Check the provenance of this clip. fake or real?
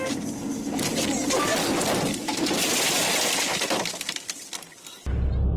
real